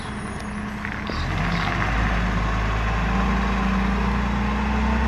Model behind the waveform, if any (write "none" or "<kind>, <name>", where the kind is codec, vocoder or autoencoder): none